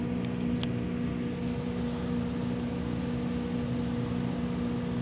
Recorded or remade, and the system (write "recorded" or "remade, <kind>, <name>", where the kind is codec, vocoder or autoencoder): recorded